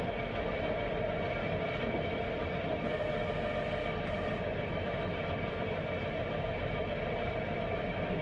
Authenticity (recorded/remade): recorded